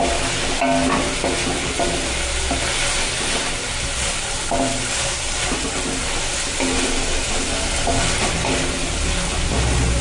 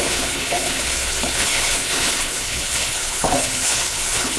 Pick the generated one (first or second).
second